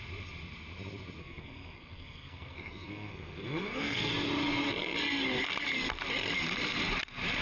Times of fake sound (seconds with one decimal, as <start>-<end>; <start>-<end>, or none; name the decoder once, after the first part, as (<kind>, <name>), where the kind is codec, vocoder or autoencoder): 1.2-4.1 (codec, SNAC)